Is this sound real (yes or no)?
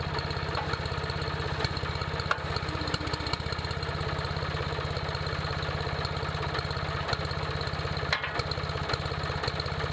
yes